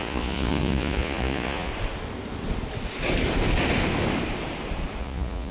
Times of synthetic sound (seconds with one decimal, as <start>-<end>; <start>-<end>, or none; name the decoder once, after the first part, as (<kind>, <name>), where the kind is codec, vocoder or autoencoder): 0.0-1.7 (vocoder, Vocos); 5.0-5.5